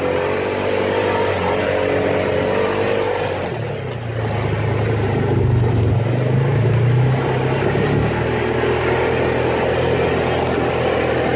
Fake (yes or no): no